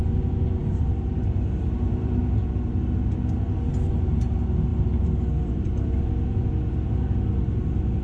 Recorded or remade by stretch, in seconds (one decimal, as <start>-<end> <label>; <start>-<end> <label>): 0.0-0.6 recorded; 0.6-2.2 remade; 2.2-4.7 recorded; 4.7-6.0 remade; 6.0-8.0 recorded